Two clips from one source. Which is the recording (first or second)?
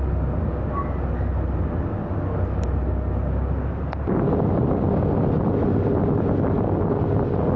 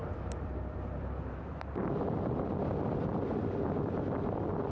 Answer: first